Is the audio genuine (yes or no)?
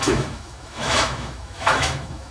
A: no